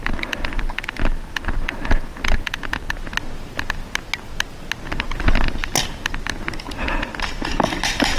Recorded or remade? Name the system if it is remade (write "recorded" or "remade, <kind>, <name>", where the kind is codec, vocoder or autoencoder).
recorded